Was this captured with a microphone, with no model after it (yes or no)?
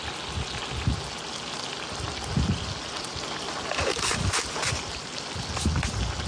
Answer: yes